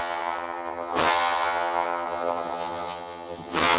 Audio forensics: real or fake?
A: fake